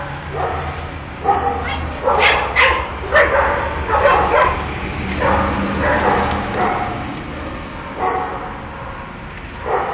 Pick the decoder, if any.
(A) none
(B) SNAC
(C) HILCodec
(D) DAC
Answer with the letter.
A